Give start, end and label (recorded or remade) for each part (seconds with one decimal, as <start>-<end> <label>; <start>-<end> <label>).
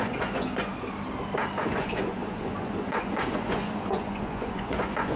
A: 0.0-0.7 remade; 0.7-1.6 recorded; 1.6-5.2 remade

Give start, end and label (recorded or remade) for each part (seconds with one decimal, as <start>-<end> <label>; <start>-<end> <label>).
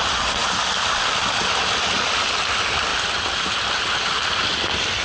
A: 0.0-0.4 recorded; 0.4-2.4 remade; 2.4-2.9 recorded; 2.9-3.6 remade; 3.6-5.0 recorded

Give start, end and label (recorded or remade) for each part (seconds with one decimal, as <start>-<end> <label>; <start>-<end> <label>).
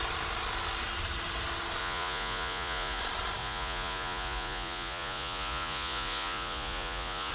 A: 0.0-1.8 recorded; 1.8-3.0 remade; 3.0-3.4 recorded; 3.4-7.3 remade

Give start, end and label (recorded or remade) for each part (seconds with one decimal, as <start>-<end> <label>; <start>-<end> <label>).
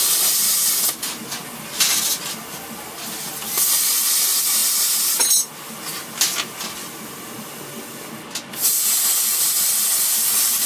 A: 0.0-10.7 recorded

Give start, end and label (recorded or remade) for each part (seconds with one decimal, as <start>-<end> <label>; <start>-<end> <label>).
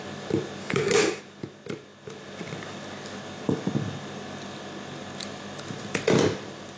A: 0.0-0.6 recorded; 0.6-1.2 remade; 1.2-6.8 recorded